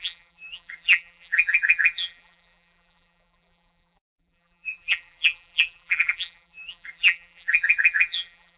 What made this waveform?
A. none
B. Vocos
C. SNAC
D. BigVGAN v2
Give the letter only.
D